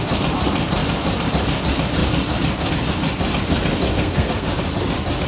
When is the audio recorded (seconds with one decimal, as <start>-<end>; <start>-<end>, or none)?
0.0-3.9; 4.5-5.3